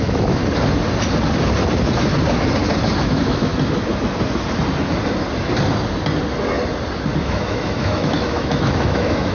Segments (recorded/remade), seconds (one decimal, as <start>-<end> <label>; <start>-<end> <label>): 0.0-0.4 remade; 0.4-3.0 recorded; 3.0-3.5 remade; 3.5-7.2 recorded; 7.2-9.3 remade